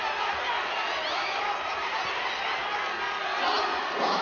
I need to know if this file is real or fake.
real